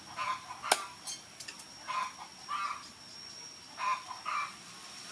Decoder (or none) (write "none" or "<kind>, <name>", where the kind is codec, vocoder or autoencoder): none